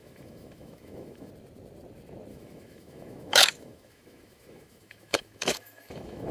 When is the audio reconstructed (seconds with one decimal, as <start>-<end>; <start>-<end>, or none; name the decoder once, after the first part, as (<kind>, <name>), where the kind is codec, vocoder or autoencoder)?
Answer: 0.0-1.3 (autoencoder, DAC-VAE); 2.3-6.3